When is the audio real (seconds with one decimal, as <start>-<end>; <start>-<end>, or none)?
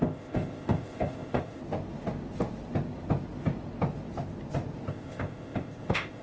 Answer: 1.6-4.9